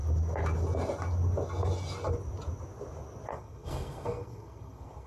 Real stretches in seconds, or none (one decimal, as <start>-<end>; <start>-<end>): 0.0-3.3